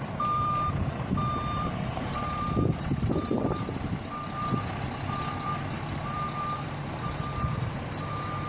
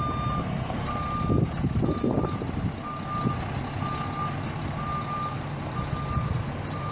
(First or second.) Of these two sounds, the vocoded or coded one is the first